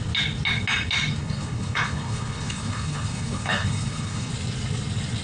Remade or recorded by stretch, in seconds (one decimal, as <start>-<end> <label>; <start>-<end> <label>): 0.0-1.2 recorded; 1.2-4.3 remade; 4.3-5.2 recorded

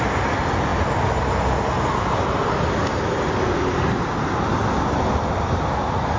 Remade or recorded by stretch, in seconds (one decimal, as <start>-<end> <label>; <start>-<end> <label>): 0.0-6.2 recorded

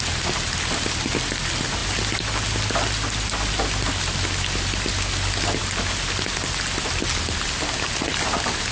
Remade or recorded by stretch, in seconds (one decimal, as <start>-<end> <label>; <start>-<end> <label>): 0.0-8.7 recorded

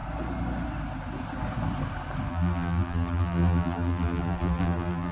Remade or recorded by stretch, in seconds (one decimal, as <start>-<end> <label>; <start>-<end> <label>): 0.0-2.3 recorded; 2.3-5.1 remade

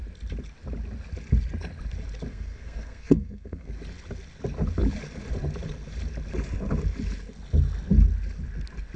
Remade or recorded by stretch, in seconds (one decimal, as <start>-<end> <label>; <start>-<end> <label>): 0.0-2.3 recorded; 2.3-3.7 remade; 3.7-9.0 recorded

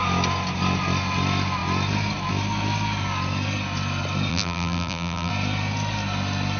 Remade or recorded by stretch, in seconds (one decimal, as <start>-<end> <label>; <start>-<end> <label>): 0.0-4.3 recorded; 4.3-5.3 remade; 5.3-6.6 recorded

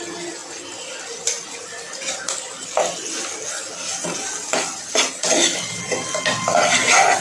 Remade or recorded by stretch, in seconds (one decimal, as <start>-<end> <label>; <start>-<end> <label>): 0.0-7.2 recorded